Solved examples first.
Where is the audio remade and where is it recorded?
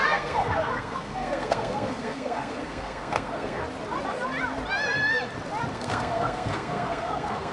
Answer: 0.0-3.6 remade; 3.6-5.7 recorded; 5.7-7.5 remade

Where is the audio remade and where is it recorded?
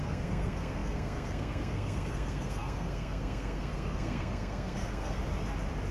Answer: 0.0-5.2 remade; 5.2-5.9 recorded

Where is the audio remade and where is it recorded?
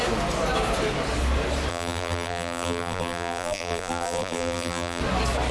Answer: 0.0-1.7 recorded; 1.7-5.0 remade; 5.0-5.5 recorded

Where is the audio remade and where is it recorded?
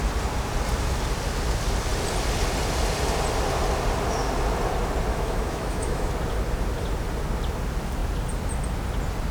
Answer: 0.0-5.1 recorded; 5.1-6.1 remade; 6.1-9.3 recorded